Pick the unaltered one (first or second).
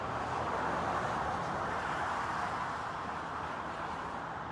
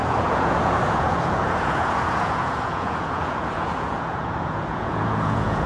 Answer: first